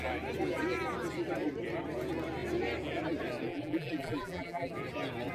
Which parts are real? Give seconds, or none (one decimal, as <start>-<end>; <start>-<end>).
0.0-3.5; 4.7-5.3